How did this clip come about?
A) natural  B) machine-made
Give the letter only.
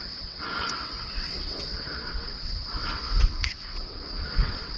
B